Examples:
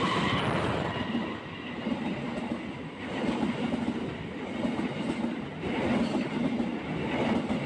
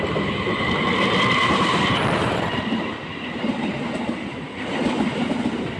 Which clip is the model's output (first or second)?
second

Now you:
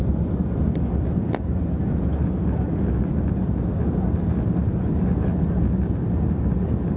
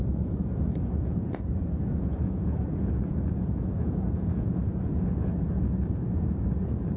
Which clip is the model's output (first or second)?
second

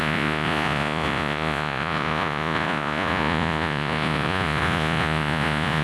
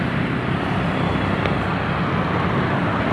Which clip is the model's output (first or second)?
first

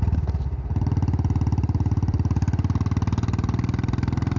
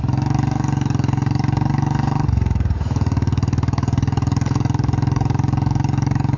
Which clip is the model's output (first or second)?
second